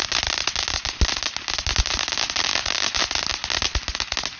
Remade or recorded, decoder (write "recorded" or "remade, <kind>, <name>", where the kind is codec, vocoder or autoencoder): recorded